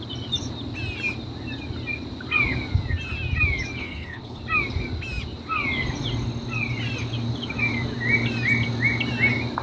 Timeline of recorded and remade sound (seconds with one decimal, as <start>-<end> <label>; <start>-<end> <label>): 0.0-3.8 recorded; 3.8-4.4 remade; 4.4-9.6 recorded

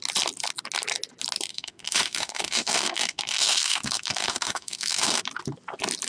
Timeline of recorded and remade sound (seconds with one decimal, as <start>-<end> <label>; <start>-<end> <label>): 0.0-1.5 recorded; 1.5-5.2 remade; 5.2-6.1 recorded